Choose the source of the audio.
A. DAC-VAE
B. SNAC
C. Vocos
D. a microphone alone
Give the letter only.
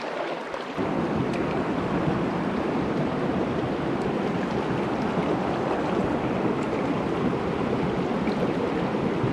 D